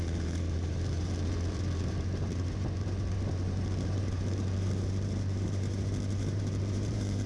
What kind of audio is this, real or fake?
fake